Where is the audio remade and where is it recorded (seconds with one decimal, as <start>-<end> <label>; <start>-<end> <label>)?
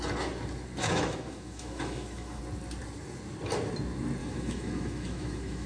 0.0-0.8 recorded; 0.8-2.4 remade; 2.4-4.2 recorded; 4.2-5.7 remade